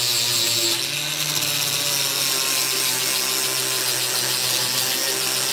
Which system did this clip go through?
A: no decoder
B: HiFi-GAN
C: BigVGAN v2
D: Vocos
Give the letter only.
A